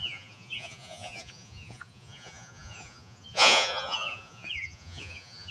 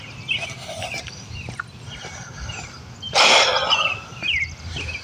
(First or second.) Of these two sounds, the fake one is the first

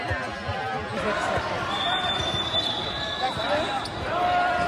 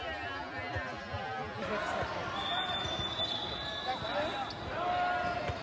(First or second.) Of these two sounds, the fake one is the first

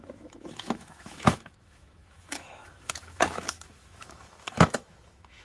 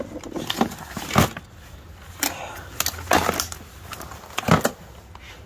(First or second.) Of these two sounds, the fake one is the first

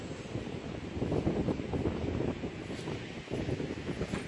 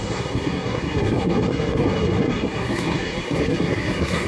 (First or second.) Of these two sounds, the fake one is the second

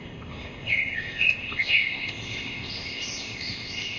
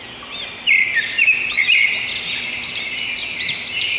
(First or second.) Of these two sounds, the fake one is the first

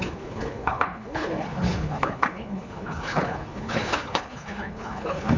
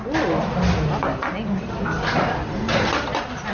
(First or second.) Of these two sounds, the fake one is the first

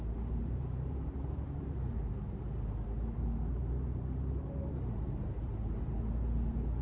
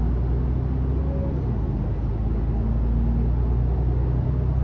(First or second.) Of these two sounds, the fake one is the first